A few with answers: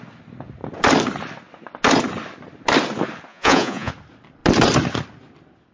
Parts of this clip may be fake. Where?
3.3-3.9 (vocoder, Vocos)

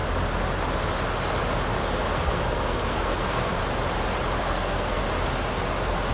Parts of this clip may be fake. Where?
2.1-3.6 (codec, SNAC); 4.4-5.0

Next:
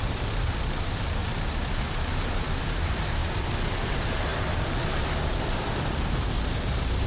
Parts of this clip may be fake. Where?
0.0-1.2 (vocoder, BigVGAN v2); 2.6-3.2; 3.8-7.1

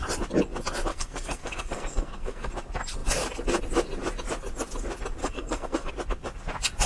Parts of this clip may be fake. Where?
0.9-2.5 (codec, SNAC); 5.2-5.9

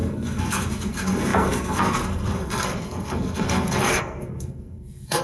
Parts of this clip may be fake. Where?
0.0-5.2 (codec, SNAC)

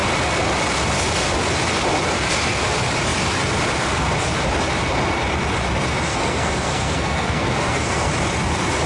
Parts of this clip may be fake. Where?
6.1-8.1 (codec, SNAC)